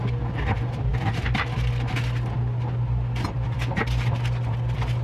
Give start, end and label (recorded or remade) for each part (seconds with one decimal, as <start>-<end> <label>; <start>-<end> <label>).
0.0-5.0 recorded